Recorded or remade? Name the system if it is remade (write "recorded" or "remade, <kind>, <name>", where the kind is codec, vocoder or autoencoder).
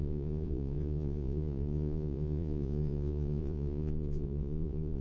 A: remade, vocoder, Vocos